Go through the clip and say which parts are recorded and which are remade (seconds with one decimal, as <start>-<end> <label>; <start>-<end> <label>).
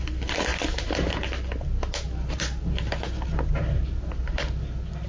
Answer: 0.0-5.1 recorded